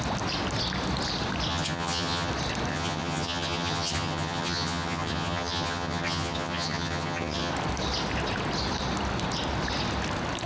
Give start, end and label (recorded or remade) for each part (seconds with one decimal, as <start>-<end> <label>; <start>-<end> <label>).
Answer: 0.0-1.5 recorded; 1.5-2.3 remade; 2.3-2.7 recorded; 2.7-7.5 remade; 7.5-10.5 recorded